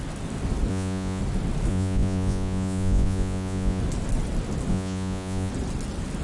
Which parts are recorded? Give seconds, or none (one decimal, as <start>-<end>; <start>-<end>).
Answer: 0.0-0.7; 1.2-1.7; 3.8-4.7; 5.5-6.2